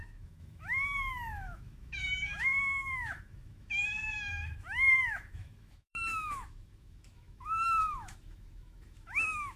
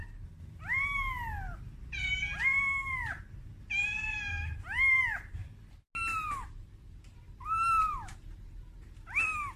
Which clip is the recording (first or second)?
second